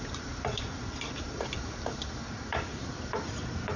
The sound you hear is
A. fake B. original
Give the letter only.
A